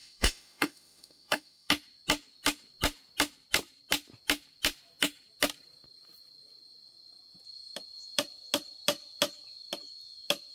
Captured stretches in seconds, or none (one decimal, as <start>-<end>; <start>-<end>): 1.7-10.5